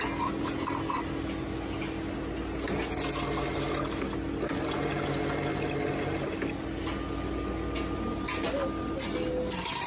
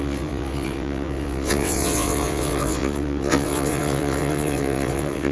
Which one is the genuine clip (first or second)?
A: first